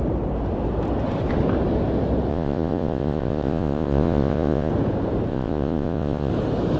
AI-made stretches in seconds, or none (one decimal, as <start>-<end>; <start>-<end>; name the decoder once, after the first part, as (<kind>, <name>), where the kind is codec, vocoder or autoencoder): 2.3-4.7 (vocoder, Vocos); 5.3-6.3